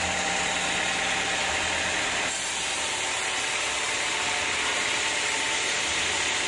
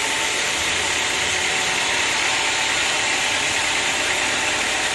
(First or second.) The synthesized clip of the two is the second